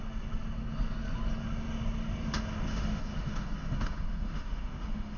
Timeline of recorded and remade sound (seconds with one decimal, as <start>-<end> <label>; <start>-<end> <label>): 0.0-2.7 recorded; 2.7-5.2 remade